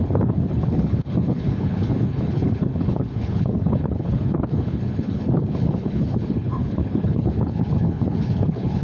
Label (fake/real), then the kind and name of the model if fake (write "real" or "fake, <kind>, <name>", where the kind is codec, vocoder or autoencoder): fake, codec, HILCodec